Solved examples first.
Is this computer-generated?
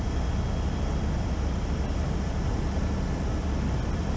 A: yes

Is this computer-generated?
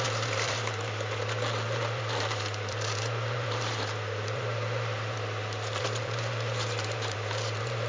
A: yes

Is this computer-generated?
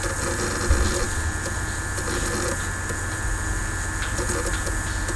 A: no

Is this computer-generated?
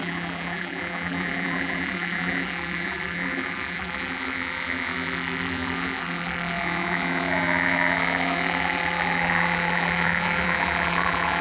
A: yes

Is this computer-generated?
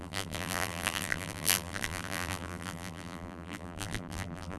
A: yes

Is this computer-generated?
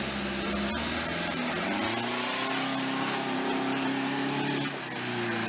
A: no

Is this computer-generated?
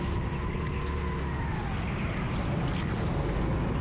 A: no